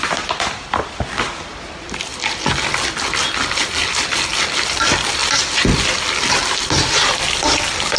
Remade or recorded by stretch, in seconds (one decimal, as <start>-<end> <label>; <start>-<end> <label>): 0.0-8.0 recorded